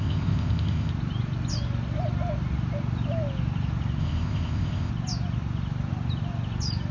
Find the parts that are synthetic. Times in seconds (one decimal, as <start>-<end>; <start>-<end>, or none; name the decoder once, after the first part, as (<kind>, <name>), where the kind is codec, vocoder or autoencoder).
0.0-0.9 (codec, ZipCodec); 4.0-4.9